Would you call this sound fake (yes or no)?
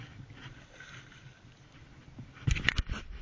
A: no